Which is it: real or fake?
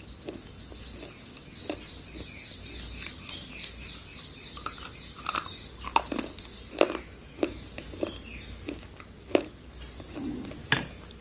real